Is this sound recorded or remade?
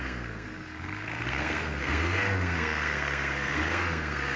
remade